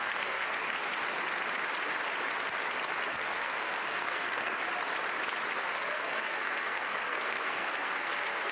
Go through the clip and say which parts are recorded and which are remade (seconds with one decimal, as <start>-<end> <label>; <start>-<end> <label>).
0.0-0.8 remade; 0.8-3.1 recorded; 3.1-4.6 remade; 4.6-5.6 recorded; 5.6-8.5 remade